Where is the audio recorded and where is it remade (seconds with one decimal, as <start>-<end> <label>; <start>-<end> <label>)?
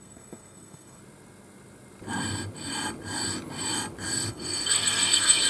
0.0-1.0 remade; 1.0-4.3 recorded; 4.3-5.5 remade